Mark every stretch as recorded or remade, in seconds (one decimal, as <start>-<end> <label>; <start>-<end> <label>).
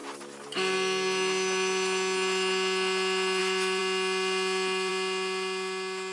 0.0-6.1 recorded